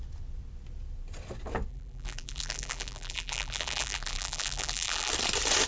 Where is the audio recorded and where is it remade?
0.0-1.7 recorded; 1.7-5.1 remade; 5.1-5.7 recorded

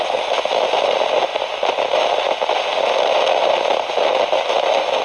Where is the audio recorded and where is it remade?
0.0-5.0 recorded

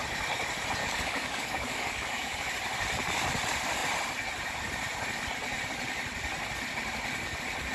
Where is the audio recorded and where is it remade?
0.0-0.8 recorded; 0.8-2.5 remade; 2.5-7.7 recorded

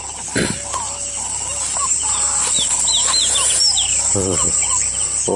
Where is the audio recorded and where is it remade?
0.0-1.5 recorded; 1.5-4.7 remade; 4.7-5.4 recorded